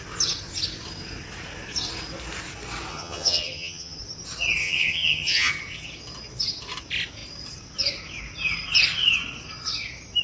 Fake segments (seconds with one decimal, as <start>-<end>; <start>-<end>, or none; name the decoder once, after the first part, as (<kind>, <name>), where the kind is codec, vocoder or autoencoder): 2.9-4.0 (vocoder, HiFi-GAN); 4.6-5.5